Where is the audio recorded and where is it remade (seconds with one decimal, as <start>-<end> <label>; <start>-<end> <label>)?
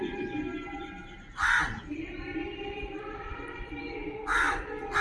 0.0-0.5 recorded; 0.5-3.0 remade; 3.0-5.0 recorded